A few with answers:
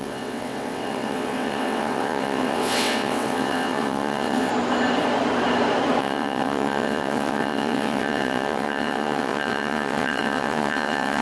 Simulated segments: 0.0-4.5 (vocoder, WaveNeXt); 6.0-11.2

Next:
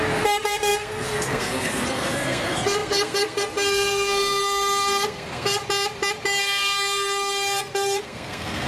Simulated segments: 0.0-5.6 (codec, SNAC); 6.4-8.7

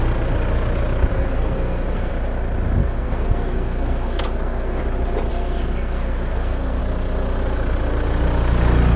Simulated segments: 1.1-2.1 (codec, SNAC); 2.8-4.8; 5.3-6.8

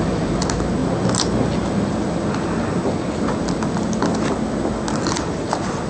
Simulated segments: none

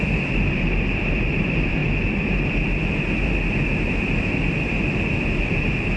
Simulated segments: 0.0-1.8 (vocoder, BigVGAN v2); 5.4-6.0

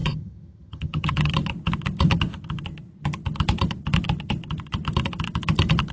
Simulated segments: 0.0-1.3 (vocoder, HiFi-GAN)

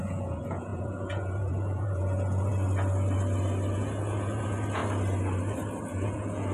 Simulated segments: 0.0-2.5 (vocoder, Vocos); 3.7-4.8; 5.8-6.5